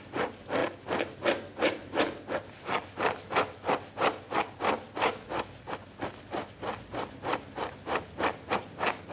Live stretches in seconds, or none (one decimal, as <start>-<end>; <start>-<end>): 0.0-9.1